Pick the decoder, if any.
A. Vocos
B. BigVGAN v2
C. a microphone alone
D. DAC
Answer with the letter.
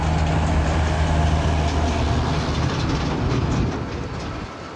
C